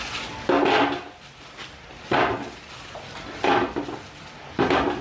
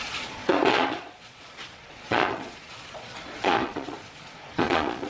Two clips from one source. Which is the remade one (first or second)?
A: second